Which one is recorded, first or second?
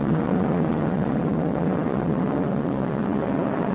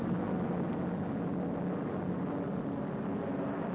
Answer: second